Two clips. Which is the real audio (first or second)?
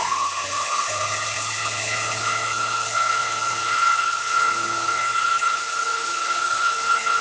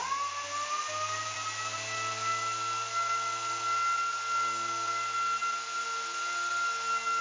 second